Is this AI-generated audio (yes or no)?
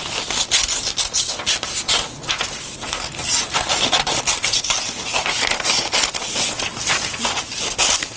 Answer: no